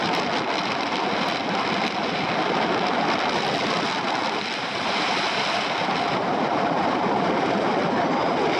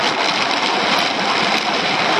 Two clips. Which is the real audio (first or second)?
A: first